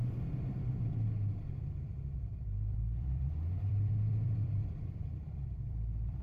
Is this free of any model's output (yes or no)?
no